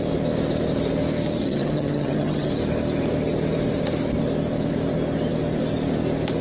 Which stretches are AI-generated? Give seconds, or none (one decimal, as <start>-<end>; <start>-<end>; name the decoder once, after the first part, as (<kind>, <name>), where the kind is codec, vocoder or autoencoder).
1.4-2.5 (vocoder, HiFi-GAN)